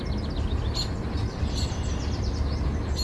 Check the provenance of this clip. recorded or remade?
recorded